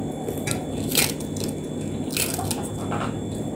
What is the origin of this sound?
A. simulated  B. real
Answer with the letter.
B